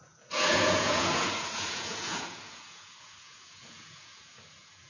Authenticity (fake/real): fake